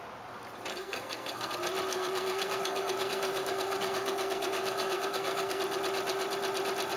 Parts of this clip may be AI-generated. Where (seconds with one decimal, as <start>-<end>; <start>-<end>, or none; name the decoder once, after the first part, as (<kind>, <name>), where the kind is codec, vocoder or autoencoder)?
0.7-1.5 (codec, SNAC); 1.9-5.6